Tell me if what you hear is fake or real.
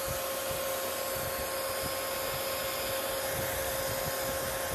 real